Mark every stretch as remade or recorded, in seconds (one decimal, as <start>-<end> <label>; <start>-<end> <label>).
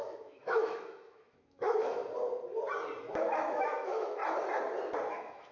0.0-2.0 remade; 2.0-3.0 recorded; 3.0-4.2 remade; 4.2-5.1 recorded; 5.1-5.5 remade